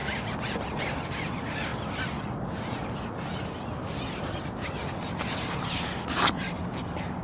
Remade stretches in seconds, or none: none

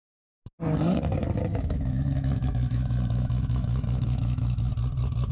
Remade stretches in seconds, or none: 1.5-4.7 (autoencoder, DAC-VAE)

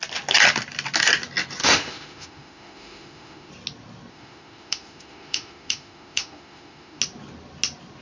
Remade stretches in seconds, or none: 1.6-3.5 (autoencoder, DAC-VAE); 4.1-7.0

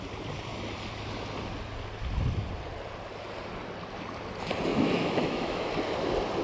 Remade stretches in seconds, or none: 4.7-5.7 (autoencoder, DAC-VAE)

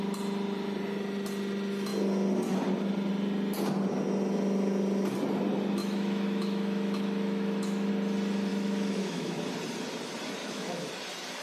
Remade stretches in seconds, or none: 5.8-7.9 (autoencoder, DAC-VAE); 8.5-9.4; 10.4-10.9

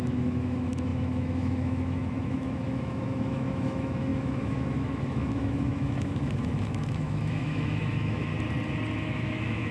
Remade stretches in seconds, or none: 0.0-8.3 (autoencoder, DAC-VAE); 9.0-9.7